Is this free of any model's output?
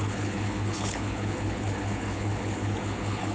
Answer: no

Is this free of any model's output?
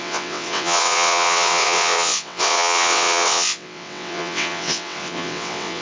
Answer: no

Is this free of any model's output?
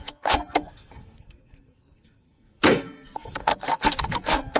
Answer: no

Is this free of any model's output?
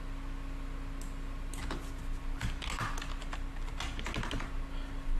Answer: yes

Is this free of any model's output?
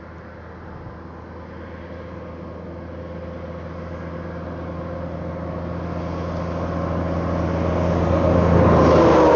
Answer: yes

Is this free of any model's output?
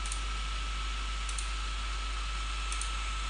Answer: yes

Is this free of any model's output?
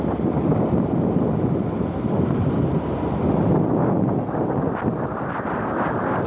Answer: yes